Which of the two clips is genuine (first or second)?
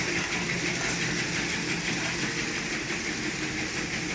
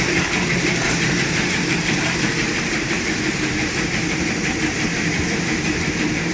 first